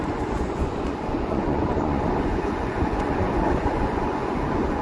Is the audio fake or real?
fake